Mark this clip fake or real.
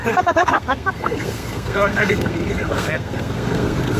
fake